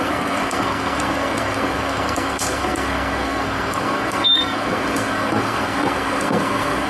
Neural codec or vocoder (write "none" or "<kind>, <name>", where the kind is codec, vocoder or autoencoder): codec, SNAC